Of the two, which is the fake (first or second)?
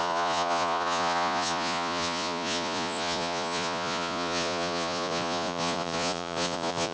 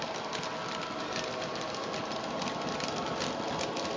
first